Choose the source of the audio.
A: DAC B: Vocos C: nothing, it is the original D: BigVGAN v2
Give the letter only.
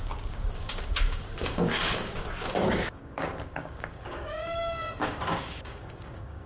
A